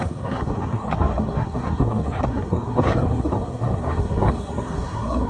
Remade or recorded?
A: remade